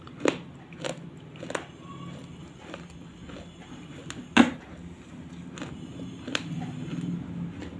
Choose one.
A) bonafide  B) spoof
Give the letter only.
A